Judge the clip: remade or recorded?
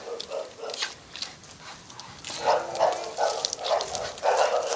recorded